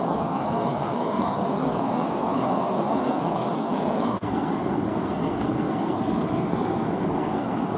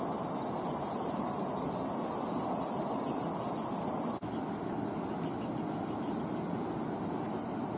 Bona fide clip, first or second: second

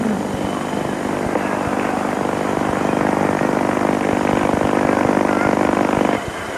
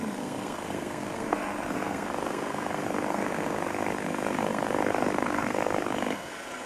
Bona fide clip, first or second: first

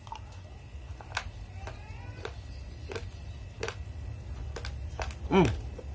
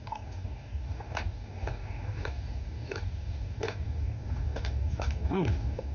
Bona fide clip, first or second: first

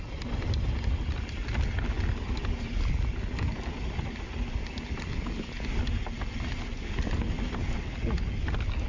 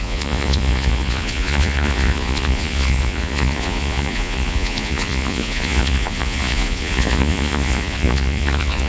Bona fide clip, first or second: first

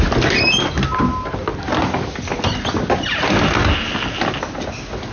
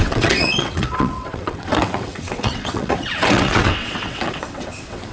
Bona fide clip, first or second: first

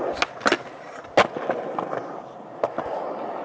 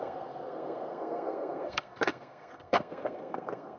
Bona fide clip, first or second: first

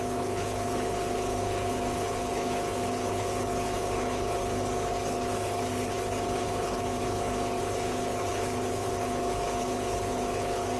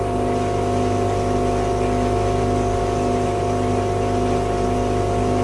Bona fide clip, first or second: second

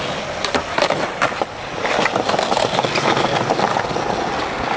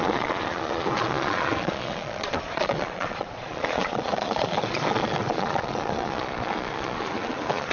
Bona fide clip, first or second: first